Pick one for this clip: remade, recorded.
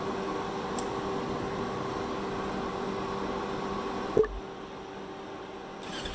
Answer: recorded